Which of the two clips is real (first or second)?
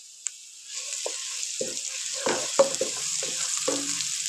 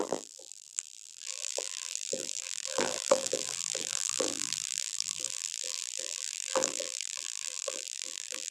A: first